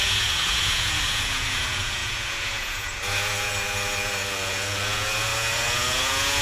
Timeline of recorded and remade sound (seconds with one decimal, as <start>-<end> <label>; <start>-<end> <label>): 0.0-6.4 remade